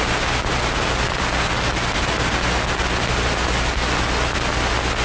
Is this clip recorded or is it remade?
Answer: recorded